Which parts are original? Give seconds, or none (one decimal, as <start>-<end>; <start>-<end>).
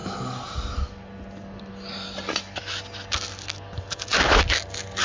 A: 0.0-5.0